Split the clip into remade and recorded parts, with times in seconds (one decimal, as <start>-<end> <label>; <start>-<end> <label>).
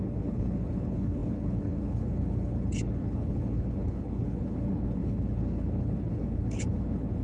0.0-7.2 remade